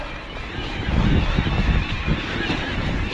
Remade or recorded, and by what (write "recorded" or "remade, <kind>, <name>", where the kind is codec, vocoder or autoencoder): recorded